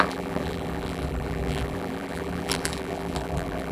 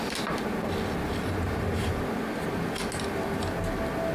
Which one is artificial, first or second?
first